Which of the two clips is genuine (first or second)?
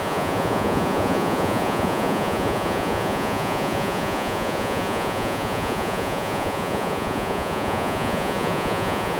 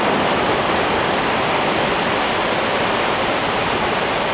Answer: second